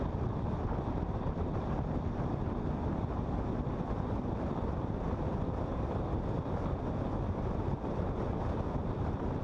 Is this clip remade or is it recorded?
recorded